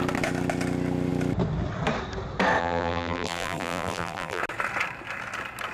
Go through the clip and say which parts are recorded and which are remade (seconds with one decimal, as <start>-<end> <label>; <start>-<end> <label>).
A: 0.0-2.6 recorded; 2.6-4.4 remade; 4.4-5.7 recorded